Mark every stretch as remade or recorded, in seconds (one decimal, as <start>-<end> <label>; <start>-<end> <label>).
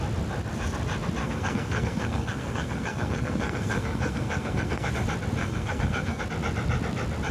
0.0-1.2 recorded; 1.2-4.9 remade; 4.9-5.4 recorded; 5.4-6.2 remade; 6.2-7.3 recorded